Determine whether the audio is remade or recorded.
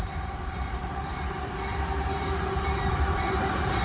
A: remade